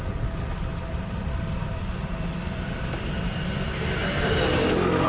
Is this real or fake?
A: real